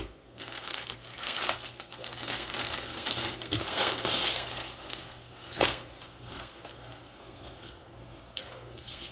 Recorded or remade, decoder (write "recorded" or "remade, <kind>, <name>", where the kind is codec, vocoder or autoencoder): remade, codec, SNAC